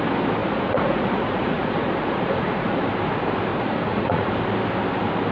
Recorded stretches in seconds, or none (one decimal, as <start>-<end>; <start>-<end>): 0.0-0.4; 2.8-3.5; 4.3-5.3

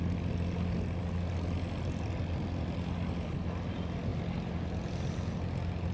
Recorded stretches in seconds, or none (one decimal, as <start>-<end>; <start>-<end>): 0.0-5.9